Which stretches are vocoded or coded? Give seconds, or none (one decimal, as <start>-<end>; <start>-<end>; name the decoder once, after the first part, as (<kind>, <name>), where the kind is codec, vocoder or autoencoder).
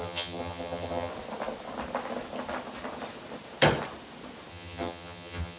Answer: 0.0-1.1 (vocoder, HiFi-GAN); 4.5-5.6